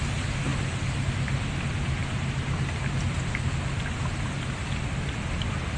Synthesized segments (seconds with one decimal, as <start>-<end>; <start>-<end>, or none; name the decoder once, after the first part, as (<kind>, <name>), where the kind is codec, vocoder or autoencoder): none